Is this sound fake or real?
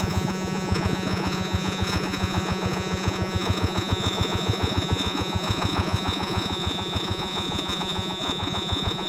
fake